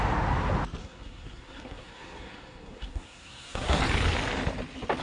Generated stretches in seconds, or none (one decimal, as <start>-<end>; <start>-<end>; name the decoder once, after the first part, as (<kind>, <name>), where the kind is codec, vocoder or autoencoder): 0.8-3.8 (codec, SNAC)